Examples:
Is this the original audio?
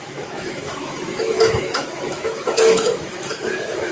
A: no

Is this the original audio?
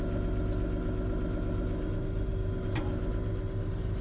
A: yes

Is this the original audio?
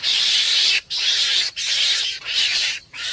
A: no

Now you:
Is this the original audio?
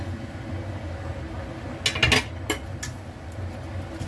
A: yes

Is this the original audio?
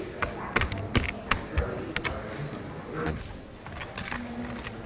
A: yes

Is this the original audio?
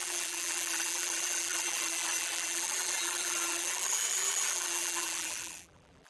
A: no